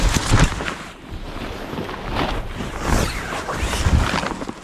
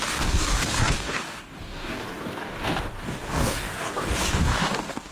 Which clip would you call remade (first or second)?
second